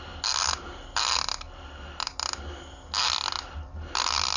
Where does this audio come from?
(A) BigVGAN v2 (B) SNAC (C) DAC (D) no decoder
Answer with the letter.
D